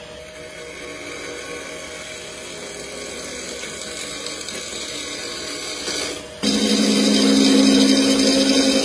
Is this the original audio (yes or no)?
yes